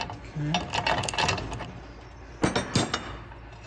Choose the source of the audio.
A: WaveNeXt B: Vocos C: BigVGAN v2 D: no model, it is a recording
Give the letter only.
D